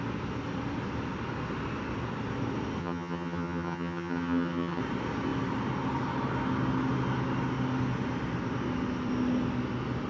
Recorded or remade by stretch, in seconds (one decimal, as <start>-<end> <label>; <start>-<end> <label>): 0.0-2.8 recorded; 2.8-4.8 remade; 4.8-10.1 recorded